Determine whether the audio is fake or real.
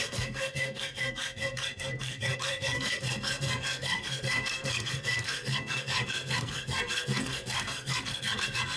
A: fake